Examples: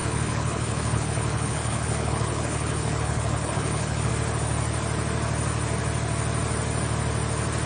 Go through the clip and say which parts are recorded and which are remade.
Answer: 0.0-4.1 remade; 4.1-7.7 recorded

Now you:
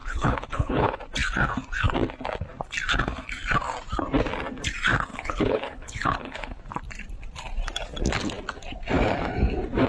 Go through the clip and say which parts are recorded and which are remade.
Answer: 0.0-1.0 remade; 1.0-5.1 recorded; 5.1-6.6 remade; 6.6-9.9 recorded

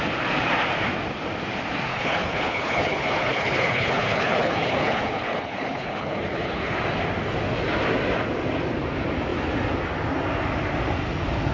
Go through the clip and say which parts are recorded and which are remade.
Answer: 0.0-1.9 recorded; 1.9-6.8 remade; 6.8-11.5 recorded

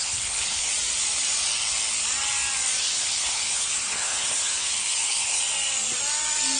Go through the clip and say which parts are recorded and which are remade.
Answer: 0.0-0.7 remade; 0.7-2.8 recorded; 2.8-5.4 remade; 5.4-6.6 recorded

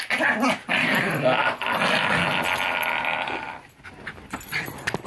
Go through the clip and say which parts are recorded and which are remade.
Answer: 0.0-5.1 recorded